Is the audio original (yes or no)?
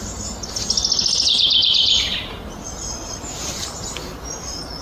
yes